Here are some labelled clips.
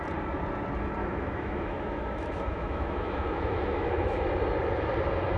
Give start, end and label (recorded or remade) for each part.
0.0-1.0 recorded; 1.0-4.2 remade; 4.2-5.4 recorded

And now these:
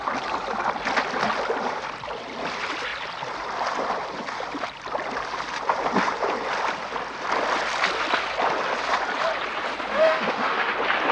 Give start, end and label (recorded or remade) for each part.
0.0-10.0 recorded; 10.0-10.7 remade; 10.7-11.1 recorded